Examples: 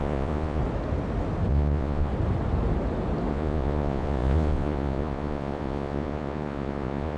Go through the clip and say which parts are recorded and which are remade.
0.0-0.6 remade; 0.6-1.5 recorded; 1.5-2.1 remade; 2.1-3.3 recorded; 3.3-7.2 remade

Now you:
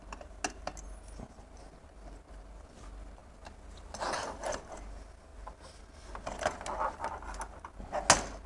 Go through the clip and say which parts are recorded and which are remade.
0.0-8.5 recorded

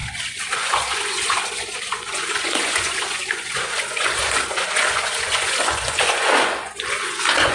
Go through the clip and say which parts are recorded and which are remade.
0.0-7.5 remade

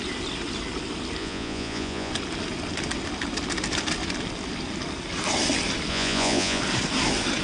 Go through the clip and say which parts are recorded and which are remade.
0.0-1.2 recorded; 1.2-2.1 remade; 2.1-5.9 recorded; 5.9-6.6 remade; 6.6-7.4 recorded

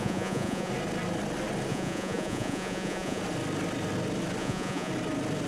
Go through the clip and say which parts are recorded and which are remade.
0.0-0.7 remade; 0.7-1.7 recorded; 1.7-3.2 remade; 3.2-4.4 recorded; 4.4-4.9 remade; 4.9-5.5 recorded